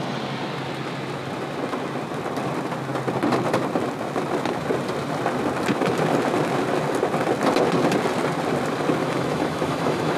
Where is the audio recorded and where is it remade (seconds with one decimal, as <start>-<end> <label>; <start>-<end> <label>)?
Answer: 0.0-9.0 recorded; 9.0-10.2 remade

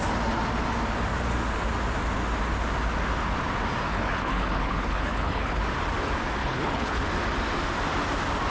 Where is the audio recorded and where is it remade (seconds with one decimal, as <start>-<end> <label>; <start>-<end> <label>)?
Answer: 0.0-3.9 recorded; 3.9-5.6 remade; 5.6-6.4 recorded; 6.4-7.0 remade; 7.0-8.5 recorded

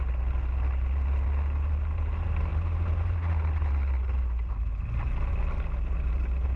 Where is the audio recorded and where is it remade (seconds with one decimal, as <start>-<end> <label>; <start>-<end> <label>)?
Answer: 0.0-6.6 recorded

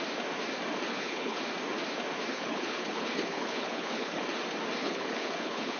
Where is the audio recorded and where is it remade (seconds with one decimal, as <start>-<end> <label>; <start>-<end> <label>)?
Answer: 0.0-0.9 recorded; 0.9-1.4 remade; 1.4-2.3 recorded; 2.3-4.2 remade; 4.2-4.8 recorded; 4.8-5.8 remade